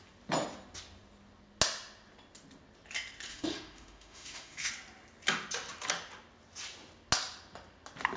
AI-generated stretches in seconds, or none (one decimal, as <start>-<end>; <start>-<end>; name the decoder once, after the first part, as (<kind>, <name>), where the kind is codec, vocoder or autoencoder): 3.3-4.7 (autoencoder, DAC-VAE)